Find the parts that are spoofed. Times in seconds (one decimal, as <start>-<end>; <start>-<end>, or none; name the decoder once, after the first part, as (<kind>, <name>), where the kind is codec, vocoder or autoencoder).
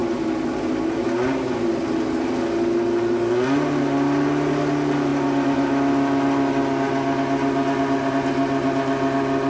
none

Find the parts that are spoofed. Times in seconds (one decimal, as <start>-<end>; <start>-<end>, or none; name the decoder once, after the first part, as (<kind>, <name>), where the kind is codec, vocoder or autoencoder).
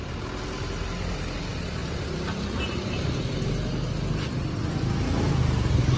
none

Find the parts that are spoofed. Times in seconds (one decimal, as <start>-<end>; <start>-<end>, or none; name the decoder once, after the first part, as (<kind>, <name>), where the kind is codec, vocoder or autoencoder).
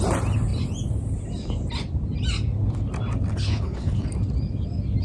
3.3-4.1 (codec, HILCodec)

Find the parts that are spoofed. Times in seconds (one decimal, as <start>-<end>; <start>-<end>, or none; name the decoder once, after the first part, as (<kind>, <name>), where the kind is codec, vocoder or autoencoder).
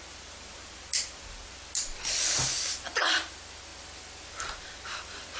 none